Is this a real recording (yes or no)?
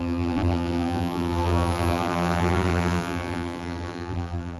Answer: no